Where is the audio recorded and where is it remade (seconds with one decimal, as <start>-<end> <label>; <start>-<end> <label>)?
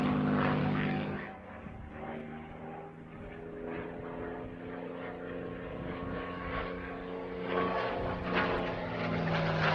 0.0-0.6 recorded; 0.6-2.6 remade; 2.6-5.7 recorded; 5.7-7.9 remade; 7.9-9.7 recorded